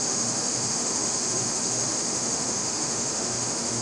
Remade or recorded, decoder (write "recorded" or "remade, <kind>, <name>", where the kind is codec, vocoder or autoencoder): remade, autoencoder, DAC-VAE